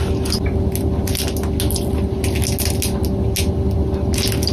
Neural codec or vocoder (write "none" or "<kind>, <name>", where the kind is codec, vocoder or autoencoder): none